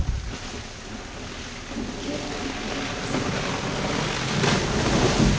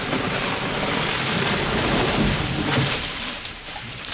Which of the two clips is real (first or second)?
first